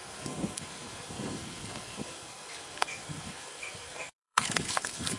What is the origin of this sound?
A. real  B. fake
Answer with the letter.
B